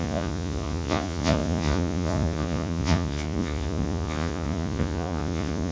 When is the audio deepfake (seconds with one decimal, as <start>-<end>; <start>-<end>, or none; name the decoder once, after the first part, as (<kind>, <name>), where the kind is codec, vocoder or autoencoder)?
0.0-5.7 (vocoder, Vocos)